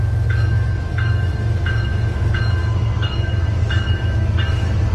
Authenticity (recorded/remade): remade